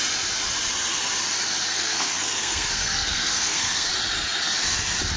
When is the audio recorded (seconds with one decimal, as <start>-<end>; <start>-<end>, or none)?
0.0-1.7; 3.9-5.2